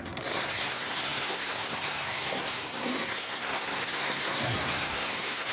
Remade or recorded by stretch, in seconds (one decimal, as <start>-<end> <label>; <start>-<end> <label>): 0.0-5.5 remade